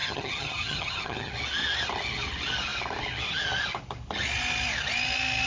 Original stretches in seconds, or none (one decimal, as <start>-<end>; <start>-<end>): 1.3-5.5

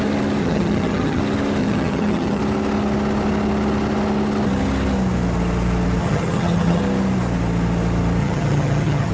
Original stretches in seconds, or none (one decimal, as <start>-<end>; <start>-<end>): 0.0-0.4; 1.2-1.6; 2.4-6.0; 6.8-8.2